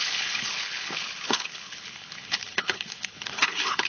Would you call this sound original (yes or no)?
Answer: no